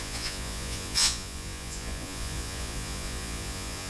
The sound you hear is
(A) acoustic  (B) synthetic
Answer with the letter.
B